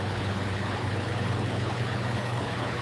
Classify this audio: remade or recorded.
remade